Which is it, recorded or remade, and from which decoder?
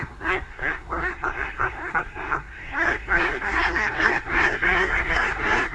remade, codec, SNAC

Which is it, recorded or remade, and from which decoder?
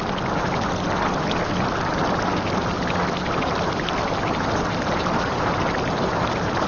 recorded